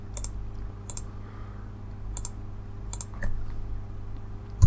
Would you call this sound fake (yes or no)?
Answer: no